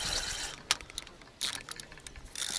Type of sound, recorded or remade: recorded